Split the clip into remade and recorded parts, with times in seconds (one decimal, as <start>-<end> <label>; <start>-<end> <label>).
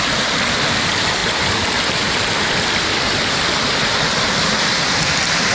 0.0-1.2 recorded; 1.2-4.5 remade; 4.5-5.5 recorded